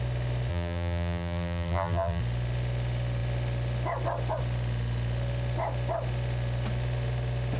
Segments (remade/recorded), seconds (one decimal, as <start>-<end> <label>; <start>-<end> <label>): 0.0-0.5 recorded; 0.5-2.2 remade; 2.2-7.6 recorded